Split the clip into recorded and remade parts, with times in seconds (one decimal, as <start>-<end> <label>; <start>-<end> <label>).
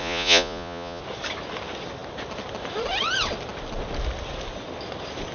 0.0-1.0 remade; 1.0-5.3 recorded